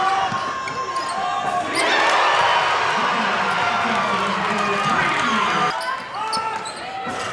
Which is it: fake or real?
real